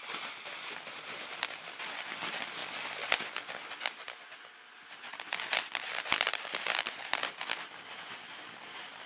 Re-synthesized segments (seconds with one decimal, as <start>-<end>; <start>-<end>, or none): 0.0-2.6; 5.0-9.1